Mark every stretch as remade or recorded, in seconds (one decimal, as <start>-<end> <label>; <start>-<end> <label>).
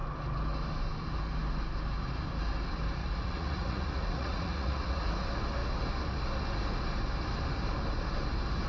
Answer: 0.0-3.0 recorded; 3.0-5.1 remade; 5.1-8.7 recorded